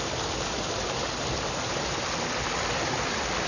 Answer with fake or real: real